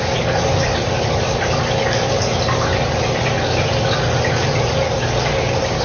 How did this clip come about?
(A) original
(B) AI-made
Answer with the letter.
A